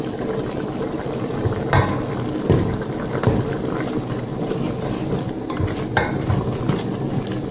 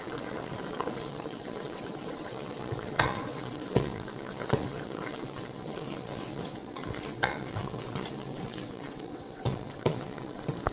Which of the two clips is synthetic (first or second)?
second